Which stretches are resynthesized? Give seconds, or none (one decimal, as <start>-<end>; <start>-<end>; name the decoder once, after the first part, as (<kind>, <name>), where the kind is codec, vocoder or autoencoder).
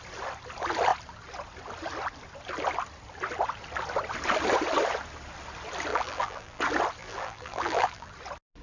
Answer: 5.9-6.6 (vocoder, BigVGAN v2); 7.0-8.1